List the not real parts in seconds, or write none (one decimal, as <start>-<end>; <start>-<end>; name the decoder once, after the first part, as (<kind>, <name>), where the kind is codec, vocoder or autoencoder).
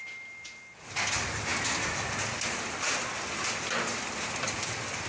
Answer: none